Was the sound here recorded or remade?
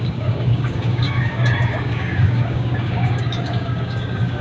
remade